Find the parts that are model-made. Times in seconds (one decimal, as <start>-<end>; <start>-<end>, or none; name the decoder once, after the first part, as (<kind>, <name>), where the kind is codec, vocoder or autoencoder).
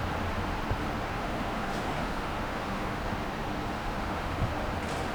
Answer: 1.1-3.0 (autoencoder, DAC-VAE); 3.8-4.5